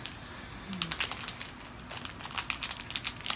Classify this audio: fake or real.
real